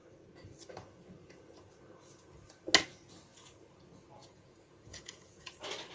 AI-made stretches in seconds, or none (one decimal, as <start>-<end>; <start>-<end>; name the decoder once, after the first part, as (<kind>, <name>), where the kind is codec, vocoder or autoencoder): 4.2-5.5 (vocoder, Vocos)